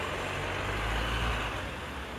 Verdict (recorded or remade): recorded